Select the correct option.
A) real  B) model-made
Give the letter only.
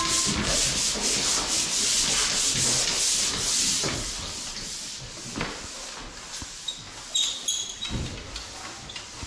A